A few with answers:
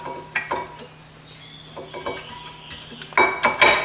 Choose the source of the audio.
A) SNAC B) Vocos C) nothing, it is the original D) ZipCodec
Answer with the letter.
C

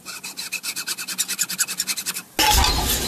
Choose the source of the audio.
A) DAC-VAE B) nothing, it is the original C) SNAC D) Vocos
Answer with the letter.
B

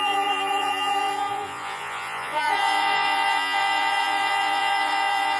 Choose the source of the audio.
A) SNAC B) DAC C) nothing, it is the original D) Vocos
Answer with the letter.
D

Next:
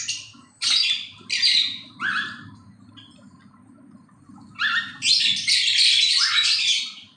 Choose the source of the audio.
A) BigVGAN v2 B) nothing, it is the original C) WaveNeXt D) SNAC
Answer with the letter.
B